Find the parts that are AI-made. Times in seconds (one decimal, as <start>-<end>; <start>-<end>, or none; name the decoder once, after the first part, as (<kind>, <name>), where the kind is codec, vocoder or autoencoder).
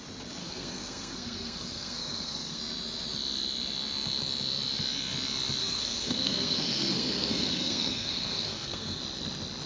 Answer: 0.4-2.6 (codec, SNAC); 5.6-9.0